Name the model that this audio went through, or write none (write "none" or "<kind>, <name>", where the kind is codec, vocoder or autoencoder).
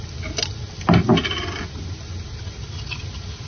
none